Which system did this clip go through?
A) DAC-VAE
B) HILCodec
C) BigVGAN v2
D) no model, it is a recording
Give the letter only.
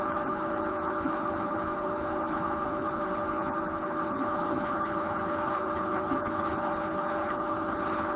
B